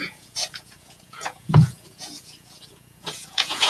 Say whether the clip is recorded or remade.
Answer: remade